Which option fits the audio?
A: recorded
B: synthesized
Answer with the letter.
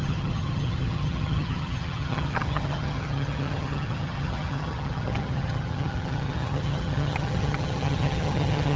B